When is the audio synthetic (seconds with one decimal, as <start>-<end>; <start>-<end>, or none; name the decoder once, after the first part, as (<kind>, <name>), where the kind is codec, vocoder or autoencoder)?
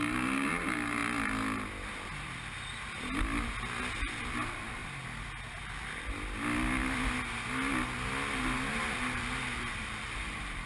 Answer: 0.0-1.0 (vocoder, BigVGAN v2); 4.2-4.8; 8.7-10.7